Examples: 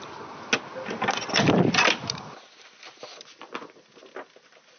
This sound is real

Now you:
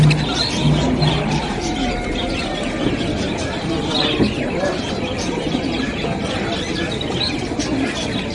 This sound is real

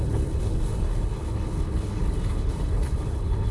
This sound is fake